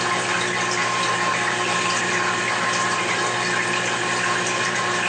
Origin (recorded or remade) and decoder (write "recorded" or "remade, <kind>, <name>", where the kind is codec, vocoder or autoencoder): recorded